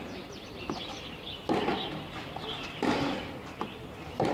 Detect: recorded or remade recorded